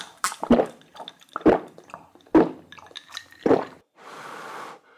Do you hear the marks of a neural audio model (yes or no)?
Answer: no